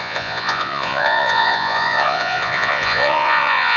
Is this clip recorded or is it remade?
remade